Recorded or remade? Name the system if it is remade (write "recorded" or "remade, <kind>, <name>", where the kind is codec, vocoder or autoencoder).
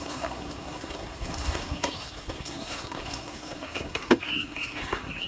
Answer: remade, codec, SNAC